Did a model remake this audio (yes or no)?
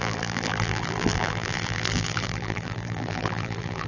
yes